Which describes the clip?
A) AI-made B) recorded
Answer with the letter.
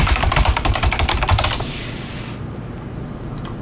B